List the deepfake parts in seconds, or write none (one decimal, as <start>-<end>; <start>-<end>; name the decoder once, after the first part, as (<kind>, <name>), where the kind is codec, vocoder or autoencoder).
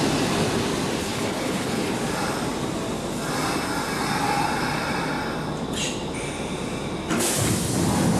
1.0-1.9 (codec, HILCodec)